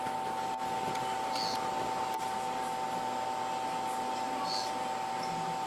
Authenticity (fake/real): real